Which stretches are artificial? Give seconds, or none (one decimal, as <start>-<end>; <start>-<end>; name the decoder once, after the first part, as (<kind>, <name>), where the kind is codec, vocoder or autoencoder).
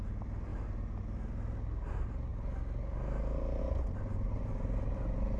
none